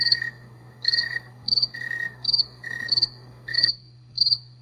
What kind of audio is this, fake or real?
fake